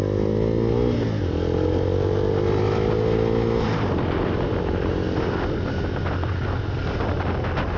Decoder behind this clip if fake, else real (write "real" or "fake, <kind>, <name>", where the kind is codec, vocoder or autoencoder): real